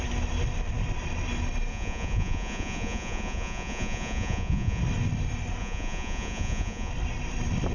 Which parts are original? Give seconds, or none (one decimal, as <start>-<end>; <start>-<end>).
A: 0.0-1.7; 4.8-5.6; 6.9-7.7